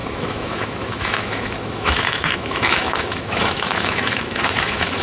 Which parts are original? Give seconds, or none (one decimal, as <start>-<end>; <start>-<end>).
none